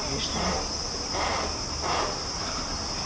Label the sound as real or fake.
real